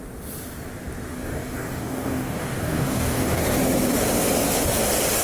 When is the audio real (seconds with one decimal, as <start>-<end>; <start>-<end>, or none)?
0.0-1.1; 3.4-5.2